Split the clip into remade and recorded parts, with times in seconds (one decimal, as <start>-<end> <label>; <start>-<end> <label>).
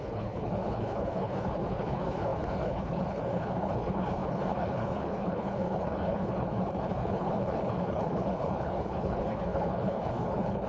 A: 0.0-10.7 remade